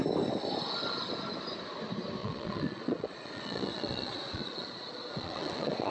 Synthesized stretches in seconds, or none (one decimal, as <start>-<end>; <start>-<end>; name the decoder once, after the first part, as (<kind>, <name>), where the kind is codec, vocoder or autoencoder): 2.2-5.9 (vocoder, Vocos)